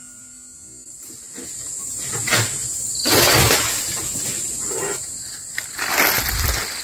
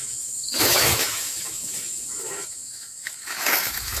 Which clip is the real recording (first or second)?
first